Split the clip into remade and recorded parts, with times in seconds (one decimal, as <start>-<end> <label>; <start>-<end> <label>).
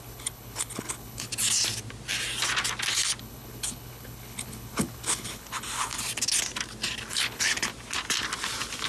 0.0-1.3 remade; 1.3-3.2 recorded; 3.2-5.9 remade; 5.9-7.1 recorded; 7.1-7.7 remade; 7.7-8.9 recorded